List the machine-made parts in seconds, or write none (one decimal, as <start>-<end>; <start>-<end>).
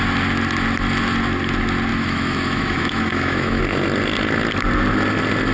1.9-3.6